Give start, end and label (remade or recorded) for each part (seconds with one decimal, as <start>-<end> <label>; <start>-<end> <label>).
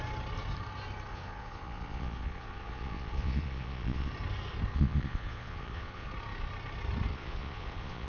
0.0-1.1 recorded; 1.1-4.1 remade; 4.1-4.7 recorded; 4.7-6.1 remade; 6.1-7.1 recorded; 7.1-8.1 remade